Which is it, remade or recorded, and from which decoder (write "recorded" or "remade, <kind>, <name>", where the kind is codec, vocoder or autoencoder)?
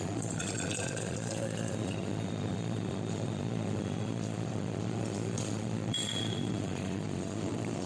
remade, vocoder, Vocos